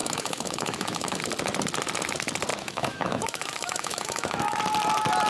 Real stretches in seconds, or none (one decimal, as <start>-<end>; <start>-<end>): 1.2-2.5; 4.6-5.3